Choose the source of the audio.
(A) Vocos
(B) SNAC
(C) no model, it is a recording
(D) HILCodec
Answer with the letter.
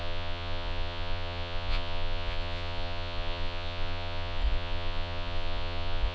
A